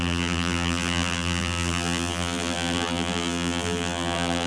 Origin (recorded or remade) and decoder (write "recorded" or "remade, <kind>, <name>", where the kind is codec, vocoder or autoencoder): remade, vocoder, BigVGAN v2